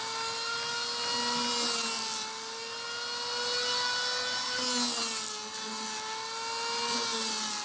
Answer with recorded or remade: recorded